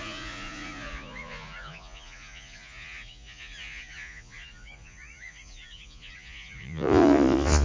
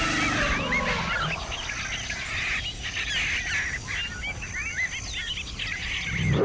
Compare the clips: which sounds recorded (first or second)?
second